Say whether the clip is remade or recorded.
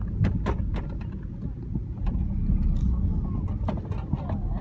recorded